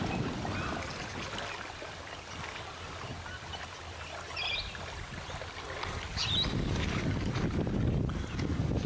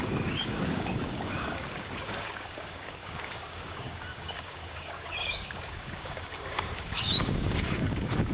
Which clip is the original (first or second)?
first